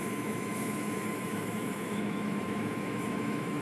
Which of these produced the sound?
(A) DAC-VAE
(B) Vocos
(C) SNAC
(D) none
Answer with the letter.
A